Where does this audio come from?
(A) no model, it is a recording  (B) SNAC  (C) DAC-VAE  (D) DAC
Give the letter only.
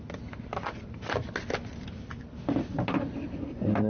A